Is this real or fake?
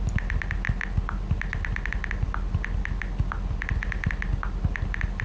real